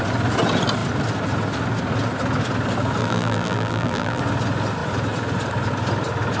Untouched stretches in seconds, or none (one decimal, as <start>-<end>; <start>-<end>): 0.0-3.0; 4.2-6.4

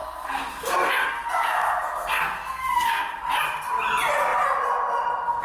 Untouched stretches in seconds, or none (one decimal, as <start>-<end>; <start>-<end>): 3.2-5.4

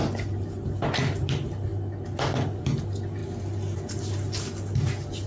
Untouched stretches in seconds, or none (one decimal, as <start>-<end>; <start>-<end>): 0.0-5.3

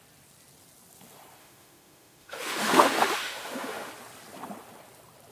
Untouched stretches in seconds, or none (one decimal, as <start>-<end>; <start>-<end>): 0.0-1.4; 3.9-5.3

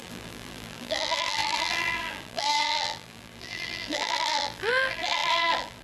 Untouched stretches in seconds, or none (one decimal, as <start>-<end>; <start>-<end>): none

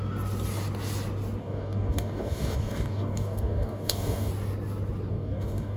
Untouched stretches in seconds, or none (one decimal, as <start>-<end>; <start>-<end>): 0.0-1.4; 4.3-5.1

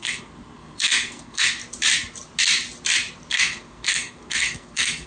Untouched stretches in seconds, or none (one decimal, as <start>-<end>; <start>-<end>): 1.6-3.3

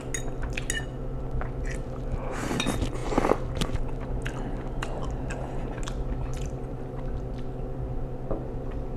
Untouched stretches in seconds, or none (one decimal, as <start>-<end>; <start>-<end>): 0.0-3.0; 3.5-6.3; 7.1-9.0